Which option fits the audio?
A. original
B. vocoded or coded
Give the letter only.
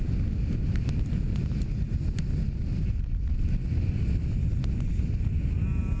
A